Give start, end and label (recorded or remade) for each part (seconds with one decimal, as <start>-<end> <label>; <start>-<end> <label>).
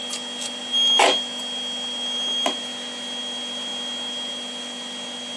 0.0-5.4 recorded